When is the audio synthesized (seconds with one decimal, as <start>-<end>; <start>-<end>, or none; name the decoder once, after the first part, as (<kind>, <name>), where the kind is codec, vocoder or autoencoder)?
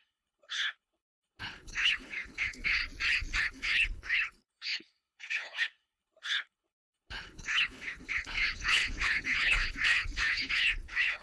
0.0-2.8 (codec, HILCodec); 3.4-11.2